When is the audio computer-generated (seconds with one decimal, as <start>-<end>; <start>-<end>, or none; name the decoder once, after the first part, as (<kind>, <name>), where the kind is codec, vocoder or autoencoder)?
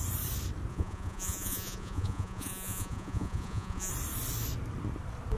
0.7-3.9 (vocoder, Vocos)